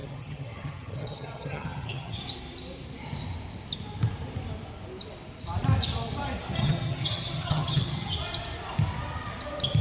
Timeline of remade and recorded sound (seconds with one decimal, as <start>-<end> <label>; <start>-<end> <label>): 0.0-2.2 remade; 2.2-6.6 recorded; 6.6-8.1 remade; 8.1-9.8 recorded